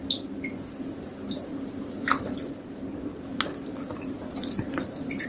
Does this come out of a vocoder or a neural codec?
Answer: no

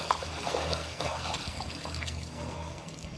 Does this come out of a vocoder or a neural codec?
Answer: yes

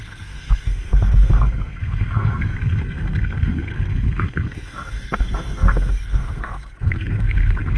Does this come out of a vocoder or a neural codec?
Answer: yes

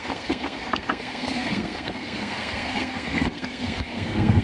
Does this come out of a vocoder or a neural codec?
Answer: yes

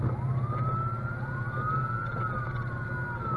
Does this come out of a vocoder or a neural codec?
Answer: no